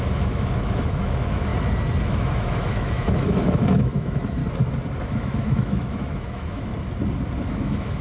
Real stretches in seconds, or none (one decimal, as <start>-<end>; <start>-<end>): 1.5-2.1; 4.4-5.0; 6.7-7.4